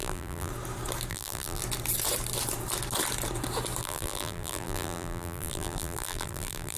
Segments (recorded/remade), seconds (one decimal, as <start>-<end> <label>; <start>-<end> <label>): 0.0-0.5 remade; 0.5-1.1 recorded; 1.1-1.6 remade; 1.6-3.8 recorded; 3.8-6.8 remade